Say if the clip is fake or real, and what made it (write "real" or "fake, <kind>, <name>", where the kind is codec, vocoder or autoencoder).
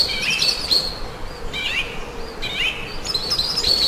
real